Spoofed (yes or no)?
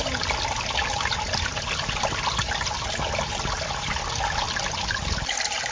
no